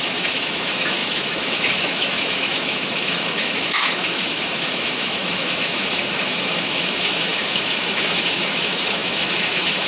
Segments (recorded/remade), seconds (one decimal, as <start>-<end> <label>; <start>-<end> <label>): 0.0-9.9 remade